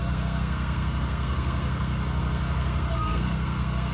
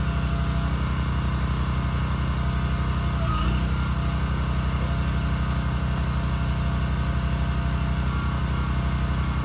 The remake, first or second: first